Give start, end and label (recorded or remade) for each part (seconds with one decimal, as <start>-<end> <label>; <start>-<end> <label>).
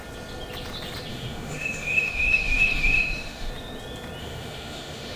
0.0-1.1 recorded; 1.1-3.5 remade; 3.5-4.2 recorded; 4.2-5.2 remade